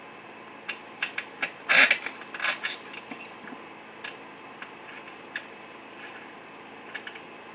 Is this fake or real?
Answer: real